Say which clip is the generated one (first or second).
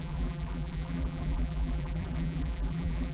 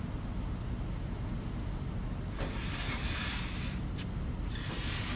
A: first